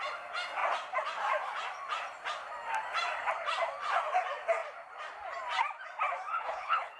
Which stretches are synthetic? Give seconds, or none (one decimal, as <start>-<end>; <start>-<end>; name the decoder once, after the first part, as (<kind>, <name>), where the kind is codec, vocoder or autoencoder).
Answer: 6.3-7.0 (codec, HILCodec)